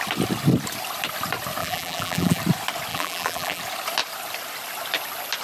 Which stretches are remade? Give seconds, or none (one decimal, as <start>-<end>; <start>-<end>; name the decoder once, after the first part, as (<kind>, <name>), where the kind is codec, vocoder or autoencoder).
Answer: 1.6-2.4 (vocoder, BigVGAN v2); 2.9-3.6

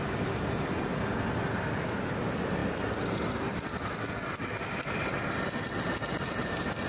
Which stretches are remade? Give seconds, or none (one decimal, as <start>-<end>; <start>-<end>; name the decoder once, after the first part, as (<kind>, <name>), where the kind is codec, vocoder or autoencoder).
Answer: 0.0-0.9 (vocoder, BigVGAN v2); 1.7-2.6; 6.2-6.9

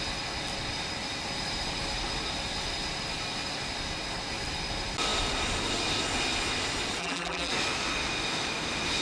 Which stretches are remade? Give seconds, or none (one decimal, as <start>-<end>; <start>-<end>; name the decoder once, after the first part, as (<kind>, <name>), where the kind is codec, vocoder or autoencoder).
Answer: 7.0-7.5 (vocoder, BigVGAN v2)

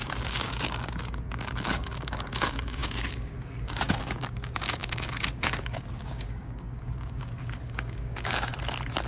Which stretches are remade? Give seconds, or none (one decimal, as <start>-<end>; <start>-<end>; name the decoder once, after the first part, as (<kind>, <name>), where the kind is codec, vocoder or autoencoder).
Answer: 0.0-8.5 (codec, DAC)